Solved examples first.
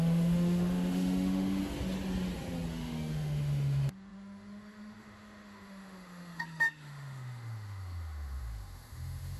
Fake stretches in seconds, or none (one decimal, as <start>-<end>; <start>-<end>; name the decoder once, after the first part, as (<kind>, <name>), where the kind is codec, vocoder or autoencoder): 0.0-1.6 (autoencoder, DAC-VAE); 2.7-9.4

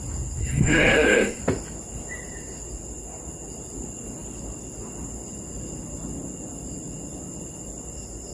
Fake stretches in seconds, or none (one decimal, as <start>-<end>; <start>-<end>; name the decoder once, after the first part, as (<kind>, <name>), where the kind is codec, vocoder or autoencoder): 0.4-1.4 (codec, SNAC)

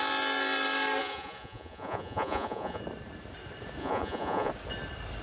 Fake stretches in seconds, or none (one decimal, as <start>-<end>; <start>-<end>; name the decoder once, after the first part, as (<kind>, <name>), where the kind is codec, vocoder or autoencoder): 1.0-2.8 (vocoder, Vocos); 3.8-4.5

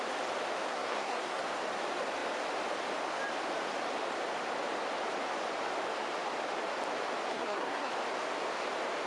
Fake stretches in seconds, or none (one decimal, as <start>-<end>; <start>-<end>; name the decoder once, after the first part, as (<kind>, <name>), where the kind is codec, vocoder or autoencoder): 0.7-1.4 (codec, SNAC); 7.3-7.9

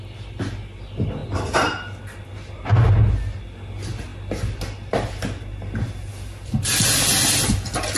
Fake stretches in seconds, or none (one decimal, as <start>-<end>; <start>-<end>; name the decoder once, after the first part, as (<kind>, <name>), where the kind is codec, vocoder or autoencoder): none